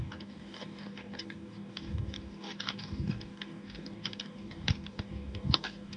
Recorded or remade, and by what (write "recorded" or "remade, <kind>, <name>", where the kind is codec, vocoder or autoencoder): remade, codec, DAC